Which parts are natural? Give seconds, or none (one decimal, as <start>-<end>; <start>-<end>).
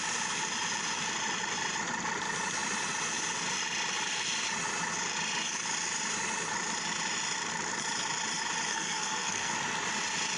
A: 0.0-8.7; 9.5-10.4